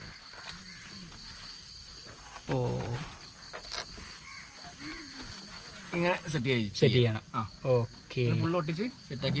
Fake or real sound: real